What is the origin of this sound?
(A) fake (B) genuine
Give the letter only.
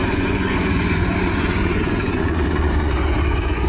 A